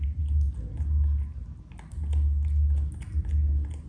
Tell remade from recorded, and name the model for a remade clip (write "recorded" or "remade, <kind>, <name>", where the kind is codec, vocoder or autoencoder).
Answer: recorded